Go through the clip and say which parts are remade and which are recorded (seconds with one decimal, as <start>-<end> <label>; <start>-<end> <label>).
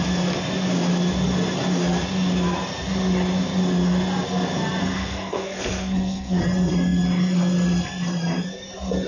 0.0-4.8 recorded; 4.8-6.4 remade; 6.4-9.1 recorded